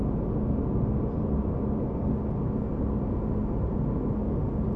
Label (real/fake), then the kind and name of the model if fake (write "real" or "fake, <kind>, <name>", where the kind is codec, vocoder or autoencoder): real